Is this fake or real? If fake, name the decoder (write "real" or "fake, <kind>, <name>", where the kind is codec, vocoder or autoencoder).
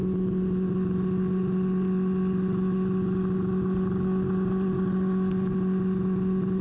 real